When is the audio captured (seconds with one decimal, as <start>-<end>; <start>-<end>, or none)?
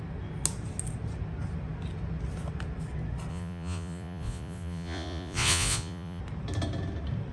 0.0-3.3; 6.2-7.3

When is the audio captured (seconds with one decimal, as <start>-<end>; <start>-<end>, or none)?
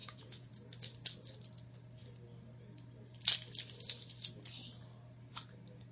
0.5-5.9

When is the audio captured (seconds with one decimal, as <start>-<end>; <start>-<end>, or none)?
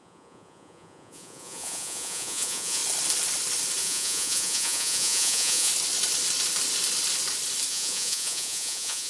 2.8-3.8; 5.7-7.7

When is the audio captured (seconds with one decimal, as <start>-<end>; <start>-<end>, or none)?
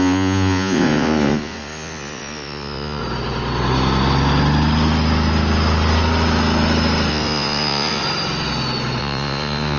3.0-7.1; 8.0-9.0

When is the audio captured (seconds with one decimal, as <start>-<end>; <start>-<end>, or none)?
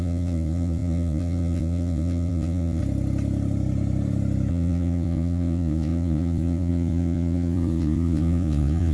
2.8-4.5